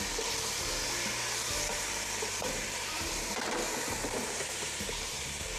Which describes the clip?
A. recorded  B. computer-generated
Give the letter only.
B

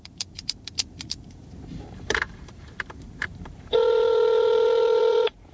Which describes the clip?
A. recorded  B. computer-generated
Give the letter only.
B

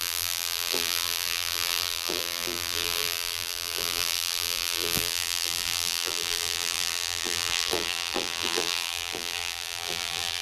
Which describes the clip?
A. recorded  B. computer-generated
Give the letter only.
B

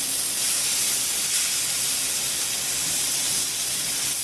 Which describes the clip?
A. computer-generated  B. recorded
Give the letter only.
A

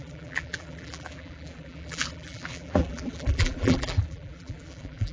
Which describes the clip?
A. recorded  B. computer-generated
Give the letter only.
B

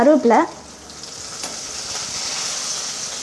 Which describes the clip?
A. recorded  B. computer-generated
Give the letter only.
A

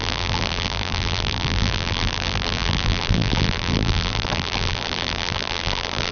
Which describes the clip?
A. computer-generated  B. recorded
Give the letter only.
A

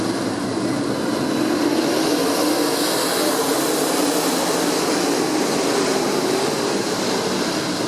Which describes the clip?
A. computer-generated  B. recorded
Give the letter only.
B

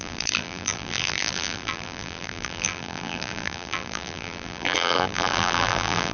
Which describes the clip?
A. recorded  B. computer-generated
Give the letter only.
B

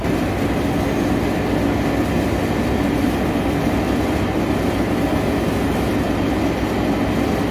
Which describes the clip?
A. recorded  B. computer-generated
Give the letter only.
A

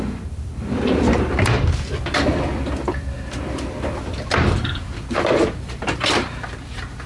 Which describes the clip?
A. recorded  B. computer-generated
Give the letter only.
B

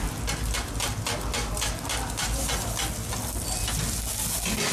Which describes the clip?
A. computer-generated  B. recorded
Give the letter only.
B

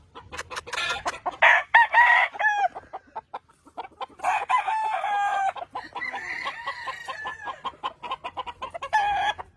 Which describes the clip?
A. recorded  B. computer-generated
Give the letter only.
A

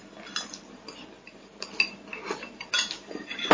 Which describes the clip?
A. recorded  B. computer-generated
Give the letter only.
A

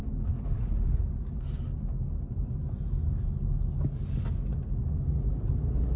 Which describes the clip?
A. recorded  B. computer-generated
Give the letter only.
A